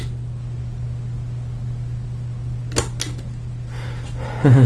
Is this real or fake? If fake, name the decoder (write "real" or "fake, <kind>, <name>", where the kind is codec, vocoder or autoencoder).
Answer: real